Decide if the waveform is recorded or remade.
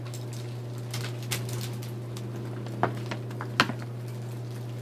recorded